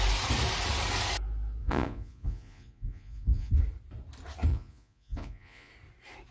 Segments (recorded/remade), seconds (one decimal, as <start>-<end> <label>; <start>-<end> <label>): 0.0-1.6 recorded; 1.6-3.5 remade; 3.5-4.5 recorded; 4.5-5.7 remade; 5.7-6.3 recorded